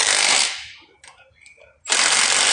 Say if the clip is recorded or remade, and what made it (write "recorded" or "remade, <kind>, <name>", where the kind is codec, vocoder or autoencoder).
remade, vocoder, BigVGAN v2